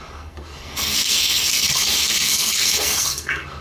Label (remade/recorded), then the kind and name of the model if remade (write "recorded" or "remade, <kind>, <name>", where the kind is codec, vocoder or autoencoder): remade, codec, SNAC